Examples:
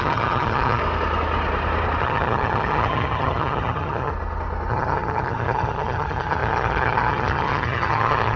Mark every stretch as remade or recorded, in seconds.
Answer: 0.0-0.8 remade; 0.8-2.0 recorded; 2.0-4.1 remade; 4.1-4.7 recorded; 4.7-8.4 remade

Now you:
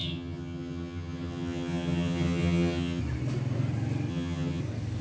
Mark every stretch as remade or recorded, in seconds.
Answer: 0.0-3.0 remade; 3.0-4.1 recorded; 4.1-4.6 remade; 4.6-5.0 recorded

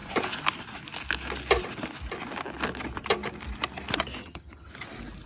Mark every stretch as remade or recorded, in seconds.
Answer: 0.0-4.2 recorded; 4.2-4.7 remade; 4.7-5.3 recorded

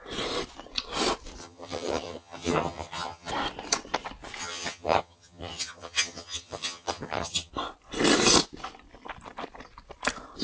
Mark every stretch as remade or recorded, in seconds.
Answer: 0.0-1.4 recorded; 1.4-3.3 remade; 3.3-4.4 recorded; 4.4-7.5 remade; 7.5-10.4 recorded

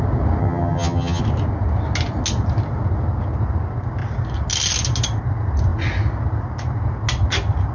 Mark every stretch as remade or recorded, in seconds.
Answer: 0.0-0.4 recorded; 0.4-1.2 remade; 1.2-7.7 recorded

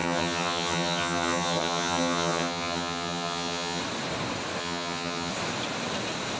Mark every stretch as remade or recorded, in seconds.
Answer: 0.0-3.8 remade; 3.8-4.6 recorded; 4.6-5.3 remade; 5.3-6.4 recorded

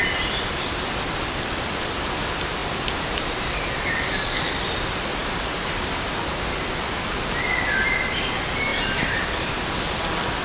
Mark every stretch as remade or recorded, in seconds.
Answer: 0.0-10.4 recorded

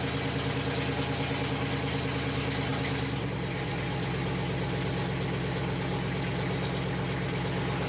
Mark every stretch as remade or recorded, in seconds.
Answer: 0.0-7.9 recorded